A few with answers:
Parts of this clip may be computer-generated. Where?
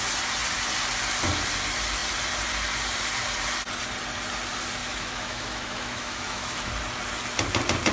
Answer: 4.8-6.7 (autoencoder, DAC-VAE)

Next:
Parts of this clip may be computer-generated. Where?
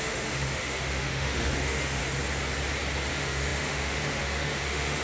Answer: 0.0-2.0 (autoencoder, DAC-VAE); 3.1-5.0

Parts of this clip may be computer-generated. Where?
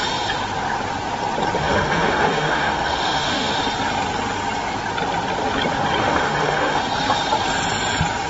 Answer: 1.6-3.6 (autoencoder, DAC-VAE); 6.0-6.8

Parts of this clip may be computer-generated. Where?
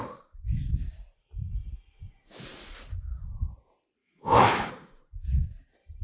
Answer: 4.0-4.7 (autoencoder, DAC-VAE)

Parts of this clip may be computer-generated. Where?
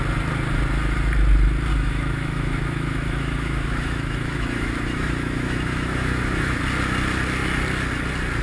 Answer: 1.7-6.6 (autoencoder, DAC-VAE)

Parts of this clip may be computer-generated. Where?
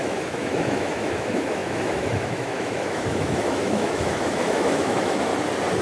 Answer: 0.0-5.3 (autoencoder, DAC-VAE)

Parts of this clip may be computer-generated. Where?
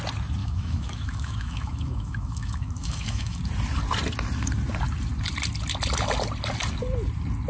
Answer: 0.4-3.4 (autoencoder, DAC-VAE)